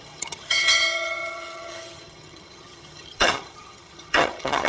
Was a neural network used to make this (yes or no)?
yes